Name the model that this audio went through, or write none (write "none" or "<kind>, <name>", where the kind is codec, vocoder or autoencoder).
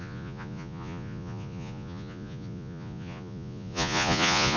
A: vocoder, Vocos